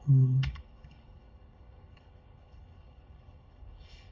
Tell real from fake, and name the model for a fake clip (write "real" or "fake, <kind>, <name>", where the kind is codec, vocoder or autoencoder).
fake, codec, HILCodec